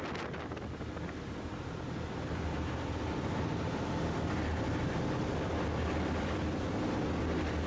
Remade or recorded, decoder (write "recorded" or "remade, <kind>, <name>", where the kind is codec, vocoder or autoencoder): recorded